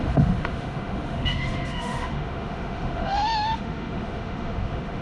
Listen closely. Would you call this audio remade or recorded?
remade